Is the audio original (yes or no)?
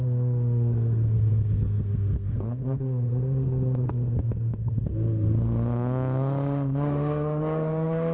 no